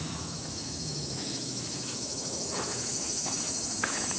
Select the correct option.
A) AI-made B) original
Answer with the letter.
A